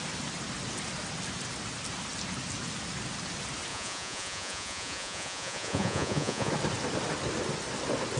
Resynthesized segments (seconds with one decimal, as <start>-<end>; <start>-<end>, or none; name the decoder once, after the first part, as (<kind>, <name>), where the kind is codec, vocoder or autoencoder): 3.7-6.5 (vocoder, Vocos)

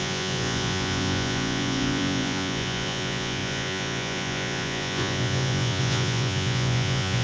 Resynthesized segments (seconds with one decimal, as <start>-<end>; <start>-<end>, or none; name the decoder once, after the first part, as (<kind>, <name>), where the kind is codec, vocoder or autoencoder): 0.0-7.2 (vocoder, Vocos)

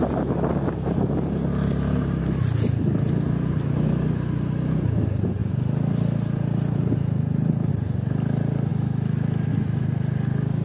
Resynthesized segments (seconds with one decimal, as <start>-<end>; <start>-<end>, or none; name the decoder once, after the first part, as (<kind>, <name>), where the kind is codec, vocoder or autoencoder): none

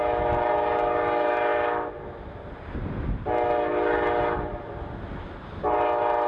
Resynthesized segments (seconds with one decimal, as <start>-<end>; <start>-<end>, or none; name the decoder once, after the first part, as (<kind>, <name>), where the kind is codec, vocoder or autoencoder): none

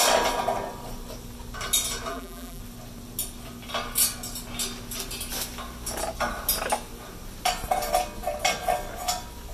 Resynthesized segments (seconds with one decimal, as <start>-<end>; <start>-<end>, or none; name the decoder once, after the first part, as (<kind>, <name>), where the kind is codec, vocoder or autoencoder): 2.1-2.6 (vocoder, BigVGAN v2)

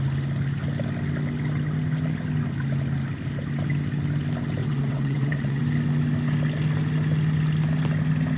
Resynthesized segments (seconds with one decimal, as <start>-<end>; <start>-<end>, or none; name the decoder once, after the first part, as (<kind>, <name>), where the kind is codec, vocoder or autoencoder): 4.6-5.6 (vocoder, WaveNeXt)

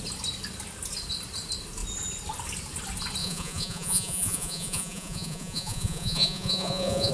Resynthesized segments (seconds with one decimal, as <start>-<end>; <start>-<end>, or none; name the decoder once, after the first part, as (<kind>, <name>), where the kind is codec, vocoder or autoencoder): 3.2-7.1 (vocoder, Vocos)